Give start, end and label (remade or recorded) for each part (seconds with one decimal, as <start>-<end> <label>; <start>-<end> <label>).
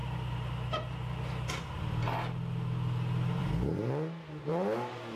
0.0-5.2 recorded